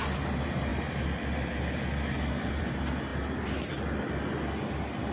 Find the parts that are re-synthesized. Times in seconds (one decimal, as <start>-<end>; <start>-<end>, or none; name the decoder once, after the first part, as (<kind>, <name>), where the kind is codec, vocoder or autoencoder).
none